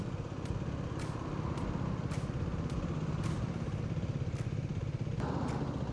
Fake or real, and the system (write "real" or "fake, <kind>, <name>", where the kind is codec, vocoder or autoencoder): real